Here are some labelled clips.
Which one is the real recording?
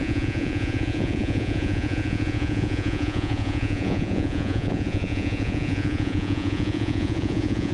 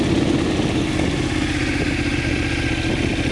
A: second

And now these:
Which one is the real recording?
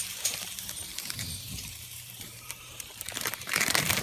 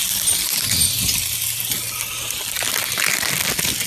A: second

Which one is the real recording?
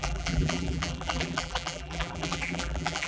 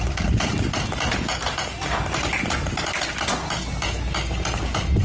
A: second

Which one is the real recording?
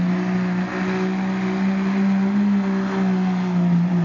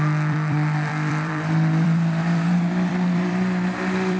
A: first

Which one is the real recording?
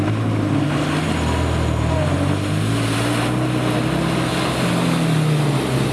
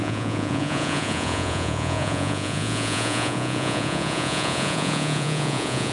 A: first